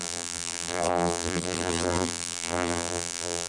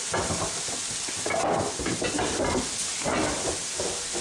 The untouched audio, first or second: second